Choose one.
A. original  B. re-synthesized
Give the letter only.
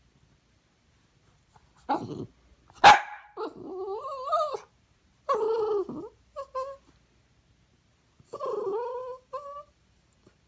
A